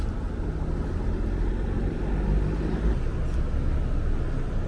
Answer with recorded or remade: recorded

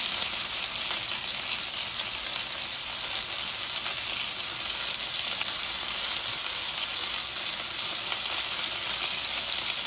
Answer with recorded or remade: recorded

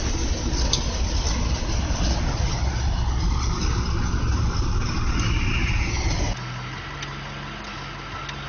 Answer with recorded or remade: recorded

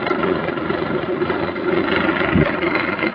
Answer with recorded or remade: remade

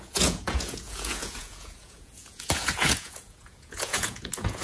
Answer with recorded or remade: remade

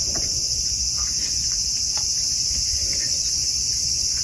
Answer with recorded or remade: remade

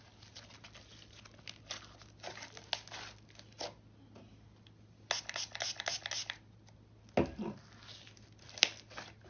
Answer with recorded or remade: recorded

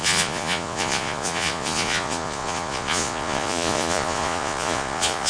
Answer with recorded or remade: remade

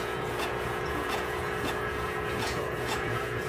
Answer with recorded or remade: remade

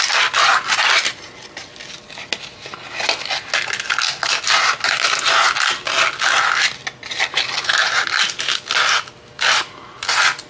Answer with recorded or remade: recorded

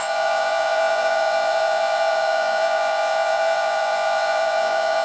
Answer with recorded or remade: remade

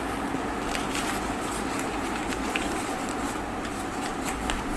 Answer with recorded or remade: recorded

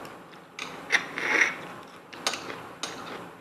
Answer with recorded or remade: recorded